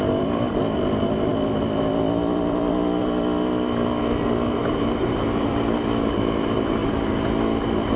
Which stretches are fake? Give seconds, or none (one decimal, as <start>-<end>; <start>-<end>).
4.6-5.5